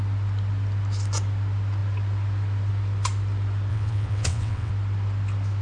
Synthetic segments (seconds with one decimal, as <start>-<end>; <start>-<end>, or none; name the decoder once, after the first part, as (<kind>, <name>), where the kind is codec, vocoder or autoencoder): 3.7-4.7 (vocoder, WaveNeXt)